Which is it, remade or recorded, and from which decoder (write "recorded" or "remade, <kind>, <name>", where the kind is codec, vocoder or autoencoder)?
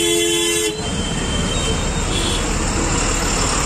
recorded